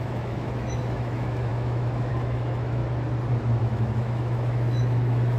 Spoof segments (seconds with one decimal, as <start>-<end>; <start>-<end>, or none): 0.0-2.8; 3.6-5.4